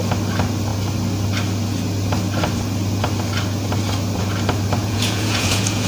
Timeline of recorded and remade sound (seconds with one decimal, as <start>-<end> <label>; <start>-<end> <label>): 0.0-4.8 recorded; 4.8-5.9 remade